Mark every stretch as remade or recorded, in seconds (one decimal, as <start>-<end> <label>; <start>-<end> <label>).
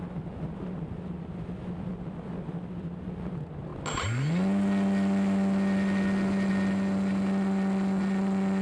0.0-8.6 recorded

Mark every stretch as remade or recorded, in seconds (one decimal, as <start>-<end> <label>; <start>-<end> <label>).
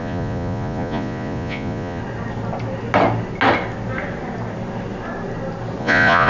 0.0-2.0 remade; 2.0-5.8 recorded; 5.8-6.3 remade